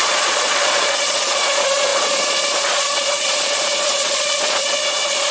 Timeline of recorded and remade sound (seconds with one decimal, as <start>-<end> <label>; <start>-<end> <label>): 0.0-5.3 remade